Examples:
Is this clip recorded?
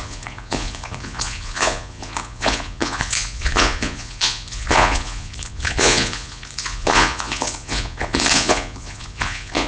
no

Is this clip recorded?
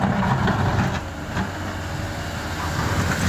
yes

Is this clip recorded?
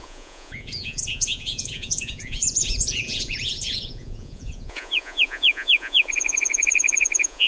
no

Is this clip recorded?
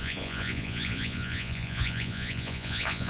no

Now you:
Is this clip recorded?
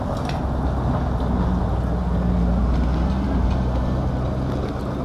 yes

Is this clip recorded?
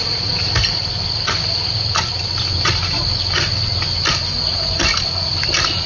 yes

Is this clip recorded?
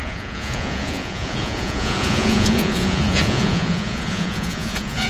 no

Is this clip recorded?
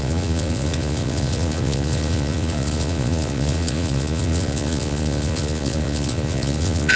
no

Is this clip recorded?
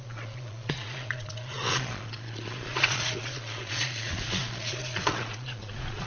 no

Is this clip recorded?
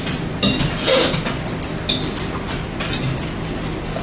yes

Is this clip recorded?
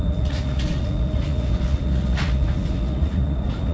no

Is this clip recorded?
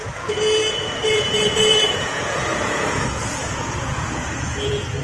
no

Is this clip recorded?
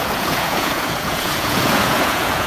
no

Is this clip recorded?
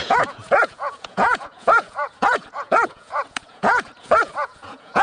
no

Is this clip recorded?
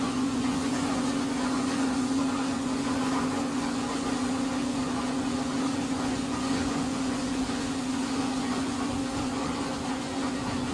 no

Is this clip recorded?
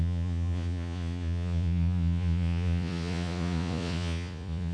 no